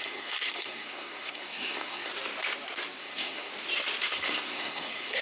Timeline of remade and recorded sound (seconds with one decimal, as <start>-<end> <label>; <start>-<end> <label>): 0.0-2.1 remade; 2.1-3.0 recorded; 3.0-3.5 remade; 3.5-4.1 recorded; 4.1-5.2 remade

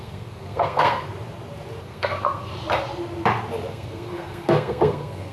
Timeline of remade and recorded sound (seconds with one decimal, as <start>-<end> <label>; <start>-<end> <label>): 0.0-1.1 remade; 1.1-1.8 recorded; 1.8-2.5 remade; 2.5-3.7 recorded; 3.7-5.3 remade